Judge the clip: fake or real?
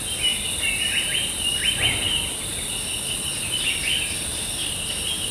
real